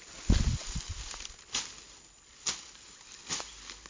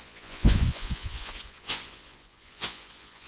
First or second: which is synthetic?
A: second